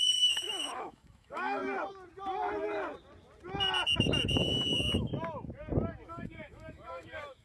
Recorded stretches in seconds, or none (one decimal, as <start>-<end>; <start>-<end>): 1.6-4.4; 5.1-6.1